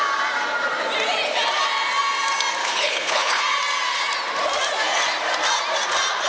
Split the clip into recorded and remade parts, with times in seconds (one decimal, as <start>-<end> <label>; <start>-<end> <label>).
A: 0.0-2.6 recorded; 2.6-3.4 remade; 3.4-6.3 recorded